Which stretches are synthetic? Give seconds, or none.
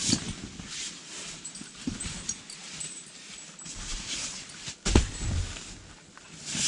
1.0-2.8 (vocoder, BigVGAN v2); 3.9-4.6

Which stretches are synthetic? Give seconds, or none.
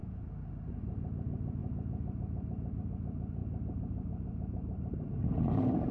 1.6-2.8 (vocoder, BigVGAN v2); 3.4-5.9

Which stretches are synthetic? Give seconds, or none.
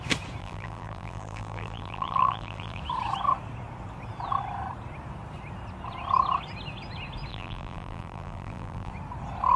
0.4-2.8 (vocoder, BigVGAN v2); 7.3-8.9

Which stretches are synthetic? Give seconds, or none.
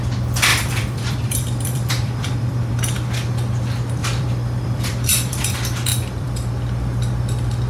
0.5-2.7 (vocoder, BigVGAN v2); 4.0-5.4; 5.9-6.5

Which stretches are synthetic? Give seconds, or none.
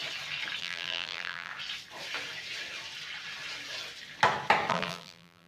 0.6-1.5 (vocoder, BigVGAN v2); 4.7-5.5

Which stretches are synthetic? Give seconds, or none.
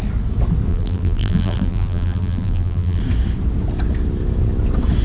0.7-3.0 (vocoder, BigVGAN v2)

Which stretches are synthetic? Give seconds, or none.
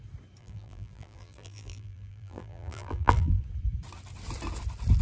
0.4-3.4 (vocoder, BigVGAN v2)